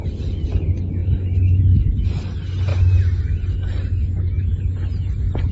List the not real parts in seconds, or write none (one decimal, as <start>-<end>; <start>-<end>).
none